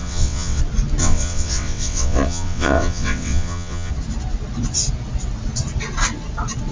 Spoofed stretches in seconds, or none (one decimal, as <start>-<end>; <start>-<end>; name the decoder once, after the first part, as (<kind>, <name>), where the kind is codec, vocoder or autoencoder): 0.0-0.6 (vocoder, WaveNeXt); 1.0-3.9